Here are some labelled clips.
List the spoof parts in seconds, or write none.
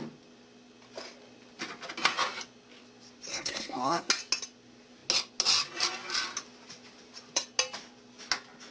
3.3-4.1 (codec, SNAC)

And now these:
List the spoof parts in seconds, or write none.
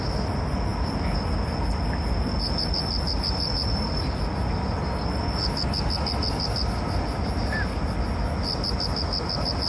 none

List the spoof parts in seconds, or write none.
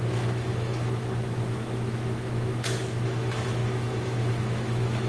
0.0-5.1 (autoencoder, DAC-VAE)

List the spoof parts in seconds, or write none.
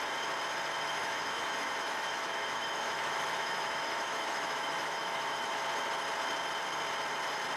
1.0-5.6 (autoencoder, DAC-VAE)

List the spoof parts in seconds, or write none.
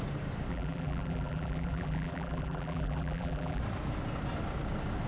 0.5-3.6 (vocoder, BigVGAN v2)